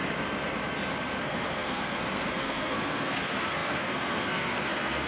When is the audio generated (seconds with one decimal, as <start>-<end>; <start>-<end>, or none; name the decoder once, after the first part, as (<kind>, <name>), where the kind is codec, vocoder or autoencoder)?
1.2-5.1 (codec, SNAC)

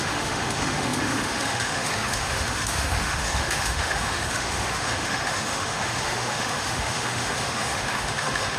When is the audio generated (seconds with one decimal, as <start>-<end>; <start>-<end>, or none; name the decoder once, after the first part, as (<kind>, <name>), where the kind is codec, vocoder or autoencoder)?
0.0-8.6 (autoencoder, DAC-VAE)